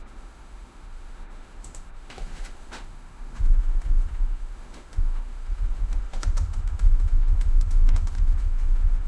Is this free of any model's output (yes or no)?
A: no